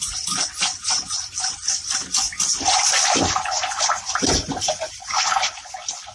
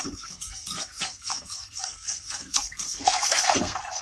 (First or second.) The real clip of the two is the first